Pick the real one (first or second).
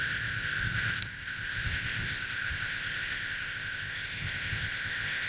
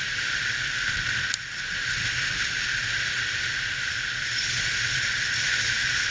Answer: second